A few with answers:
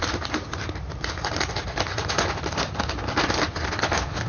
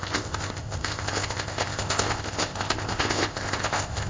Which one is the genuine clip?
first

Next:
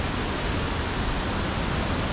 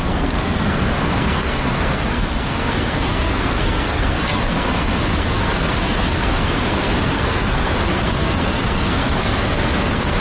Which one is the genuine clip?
first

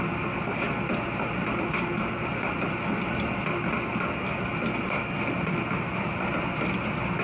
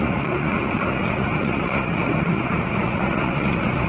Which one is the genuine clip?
first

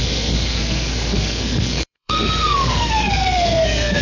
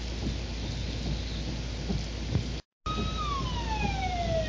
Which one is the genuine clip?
second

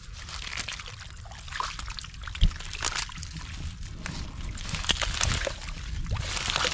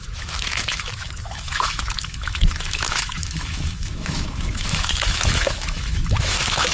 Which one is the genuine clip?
first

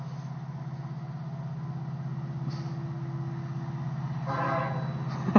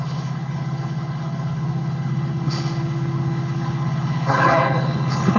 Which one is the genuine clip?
first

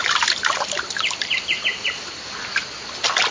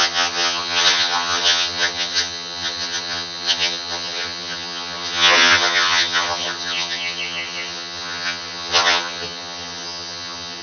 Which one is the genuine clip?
first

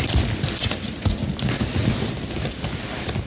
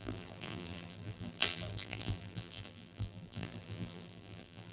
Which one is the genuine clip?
first